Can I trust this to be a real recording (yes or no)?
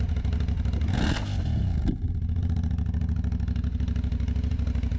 yes